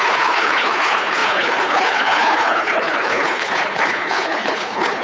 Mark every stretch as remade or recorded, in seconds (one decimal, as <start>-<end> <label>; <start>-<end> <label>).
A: 0.0-5.0 remade